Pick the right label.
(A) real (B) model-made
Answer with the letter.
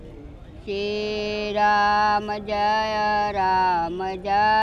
A